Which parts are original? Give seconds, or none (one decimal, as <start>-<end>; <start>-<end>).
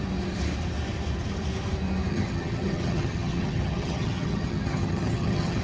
0.0-2.1